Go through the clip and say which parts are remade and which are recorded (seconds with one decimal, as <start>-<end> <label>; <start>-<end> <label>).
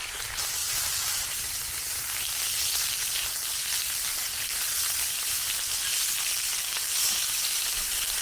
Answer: 0.0-0.6 recorded; 0.6-2.0 remade; 2.0-8.2 recorded